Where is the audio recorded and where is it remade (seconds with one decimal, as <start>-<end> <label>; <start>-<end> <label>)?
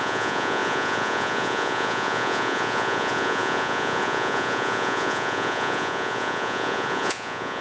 0.0-7.6 remade